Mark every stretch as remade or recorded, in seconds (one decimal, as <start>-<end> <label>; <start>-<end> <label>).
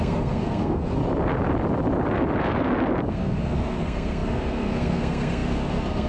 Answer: 0.0-1.0 remade; 1.0-3.1 recorded; 3.1-6.1 remade